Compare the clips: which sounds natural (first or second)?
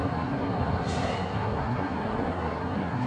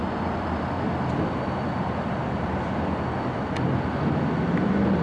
second